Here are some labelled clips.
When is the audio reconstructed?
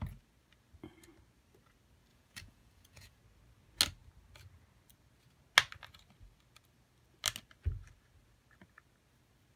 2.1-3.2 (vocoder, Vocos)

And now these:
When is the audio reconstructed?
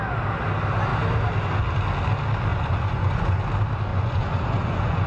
2.5-3.4 (vocoder, Vocos); 3.9-5.1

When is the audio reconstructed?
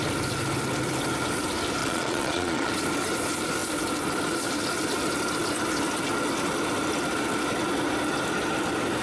1.8-2.7 (vocoder, Vocos)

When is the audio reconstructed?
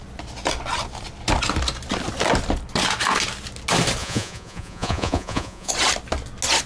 4.0-5.7 (vocoder, Vocos)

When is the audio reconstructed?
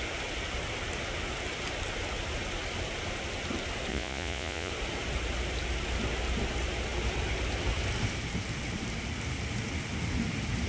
3.9-4.7 (vocoder, Vocos)